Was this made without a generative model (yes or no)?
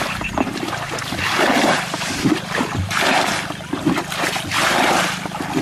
yes